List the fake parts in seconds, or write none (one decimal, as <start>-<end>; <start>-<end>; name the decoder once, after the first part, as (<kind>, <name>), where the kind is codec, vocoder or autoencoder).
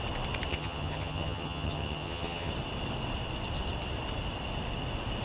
0.5-2.5 (vocoder, HiFi-GAN)